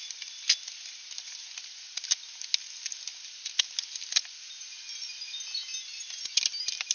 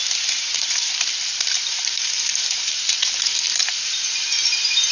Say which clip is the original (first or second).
first